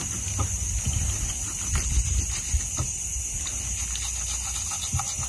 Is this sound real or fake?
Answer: real